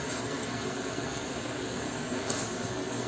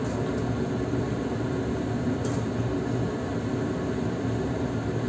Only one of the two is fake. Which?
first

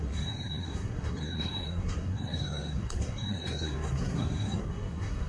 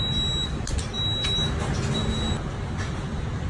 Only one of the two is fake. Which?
first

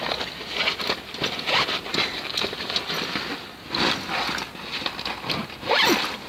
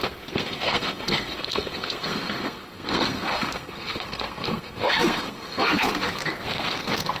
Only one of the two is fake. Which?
second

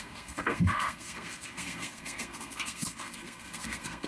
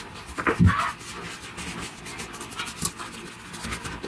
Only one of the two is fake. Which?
first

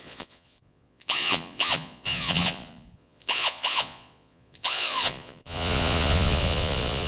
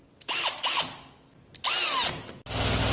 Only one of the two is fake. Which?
first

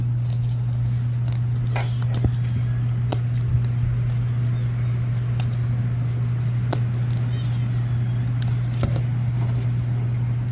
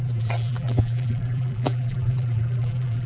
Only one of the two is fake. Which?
second